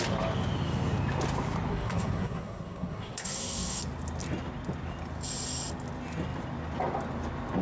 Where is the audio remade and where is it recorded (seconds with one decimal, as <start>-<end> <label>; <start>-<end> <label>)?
0.0-1.7 recorded; 1.7-3.8 remade; 3.8-7.6 recorded